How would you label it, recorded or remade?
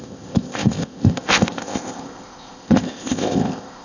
remade